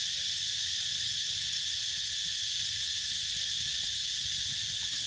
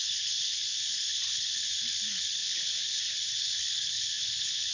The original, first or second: first